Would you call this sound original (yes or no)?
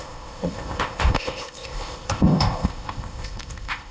no